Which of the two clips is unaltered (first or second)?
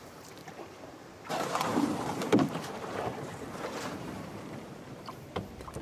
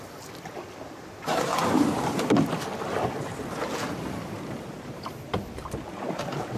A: second